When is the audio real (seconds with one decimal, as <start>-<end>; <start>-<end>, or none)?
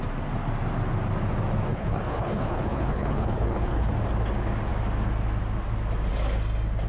0.0-1.7; 3.9-6.9